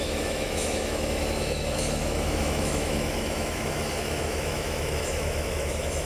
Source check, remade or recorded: remade